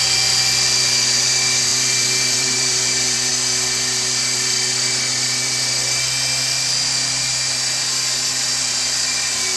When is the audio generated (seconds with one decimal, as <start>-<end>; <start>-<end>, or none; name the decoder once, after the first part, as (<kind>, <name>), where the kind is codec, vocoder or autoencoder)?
1.7-3.3 (vocoder, BigVGAN v2)